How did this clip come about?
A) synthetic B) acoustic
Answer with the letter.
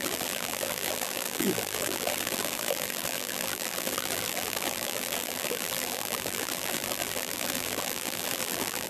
A